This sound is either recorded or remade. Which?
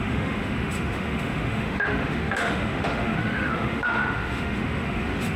remade